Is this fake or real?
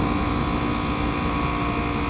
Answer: real